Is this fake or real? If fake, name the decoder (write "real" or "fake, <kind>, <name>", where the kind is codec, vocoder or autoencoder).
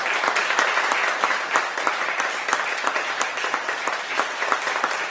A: fake, vocoder, BigVGAN v2